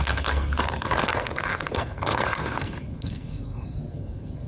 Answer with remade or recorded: remade